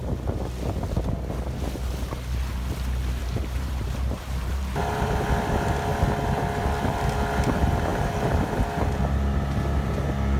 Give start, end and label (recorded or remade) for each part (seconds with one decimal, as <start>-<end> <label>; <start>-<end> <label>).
0.0-3.2 recorded; 3.2-5.3 remade; 5.3-7.9 recorded; 7.9-8.5 remade; 8.5-10.4 recorded